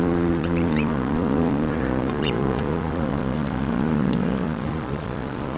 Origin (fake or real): fake